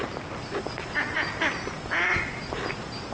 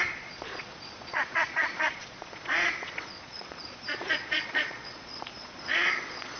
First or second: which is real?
first